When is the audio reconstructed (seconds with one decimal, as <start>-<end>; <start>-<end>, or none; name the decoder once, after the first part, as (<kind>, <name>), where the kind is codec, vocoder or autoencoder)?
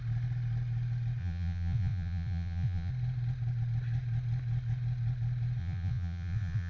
1.2-2.9 (vocoder, Vocos); 5.6-6.7